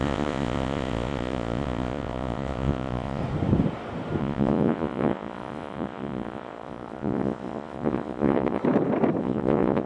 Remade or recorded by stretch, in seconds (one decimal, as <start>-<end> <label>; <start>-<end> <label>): 0.0-3.2 remade; 3.2-4.2 recorded; 4.2-8.6 remade; 8.6-9.2 recorded; 9.2-9.9 remade